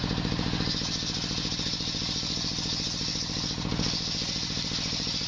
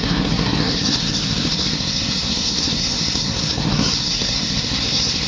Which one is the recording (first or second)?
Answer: first